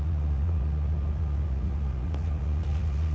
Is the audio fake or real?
fake